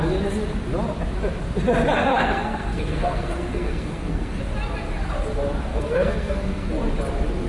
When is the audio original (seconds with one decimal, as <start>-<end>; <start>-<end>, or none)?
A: 0.0-2.1; 4.4-5.7; 6.7-7.5